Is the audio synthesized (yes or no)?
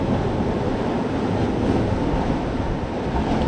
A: no